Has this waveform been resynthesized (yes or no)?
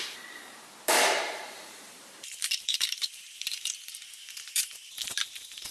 yes